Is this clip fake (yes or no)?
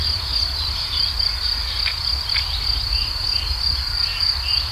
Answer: no